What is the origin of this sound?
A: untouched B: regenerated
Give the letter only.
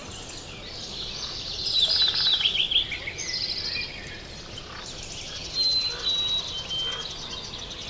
A